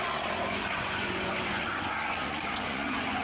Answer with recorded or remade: remade